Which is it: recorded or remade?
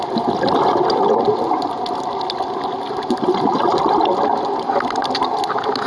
recorded